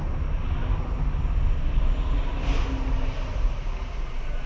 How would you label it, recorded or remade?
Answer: recorded